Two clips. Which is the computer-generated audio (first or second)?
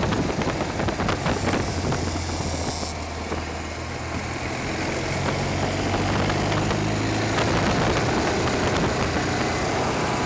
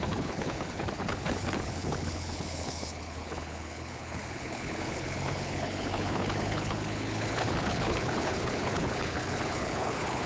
second